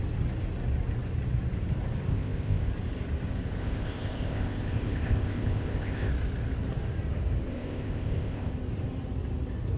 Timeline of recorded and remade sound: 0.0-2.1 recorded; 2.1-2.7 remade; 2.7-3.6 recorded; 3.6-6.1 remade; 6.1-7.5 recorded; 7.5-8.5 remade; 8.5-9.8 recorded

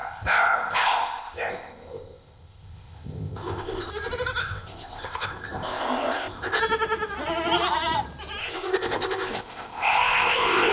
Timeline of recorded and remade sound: 0.0-3.9 remade; 3.9-4.4 recorded; 4.4-6.6 remade; 6.6-8.4 recorded; 8.4-10.7 remade

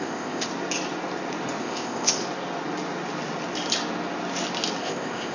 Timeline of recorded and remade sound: 0.0-0.5 remade; 0.5-1.6 recorded; 1.6-2.2 remade; 2.2-4.8 recorded; 4.8-5.3 remade

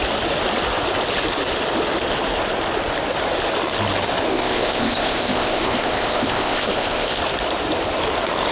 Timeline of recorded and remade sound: 0.0-4.3 recorded; 4.3-7.2 remade; 7.2-8.5 recorded

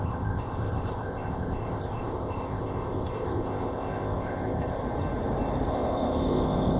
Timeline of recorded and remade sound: 0.0-4.8 remade; 4.8-5.7 recorded; 5.7-6.8 remade

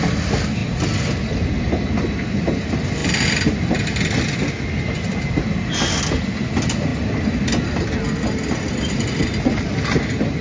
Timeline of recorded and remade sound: 0.0-10.4 recorded

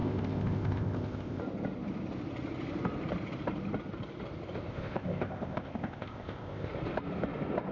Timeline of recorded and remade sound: 0.0-1.4 remade; 1.4-4.7 recorded; 4.7-6.7 remade; 6.7-7.7 recorded